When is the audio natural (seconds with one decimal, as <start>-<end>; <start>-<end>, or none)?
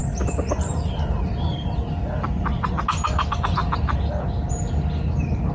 0.0-5.5